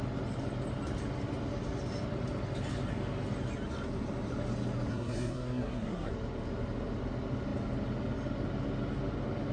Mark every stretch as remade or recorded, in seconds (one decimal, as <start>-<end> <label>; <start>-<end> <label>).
0.0-4.9 recorded; 4.9-6.1 remade; 6.1-9.5 recorded